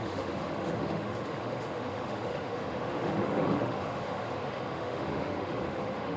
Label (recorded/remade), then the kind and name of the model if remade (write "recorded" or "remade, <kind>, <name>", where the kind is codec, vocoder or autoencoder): remade, autoencoder, DAC-VAE